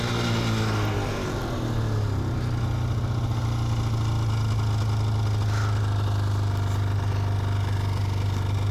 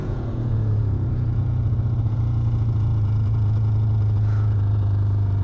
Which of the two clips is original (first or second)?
first